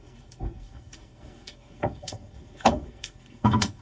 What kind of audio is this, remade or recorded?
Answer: remade